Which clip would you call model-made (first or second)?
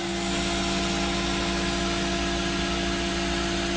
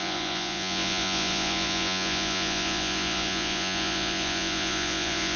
second